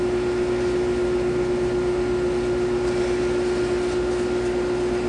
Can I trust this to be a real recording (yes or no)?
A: no